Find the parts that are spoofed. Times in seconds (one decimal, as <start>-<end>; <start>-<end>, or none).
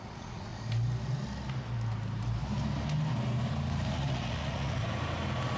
0.0-0.5; 3.9-4.8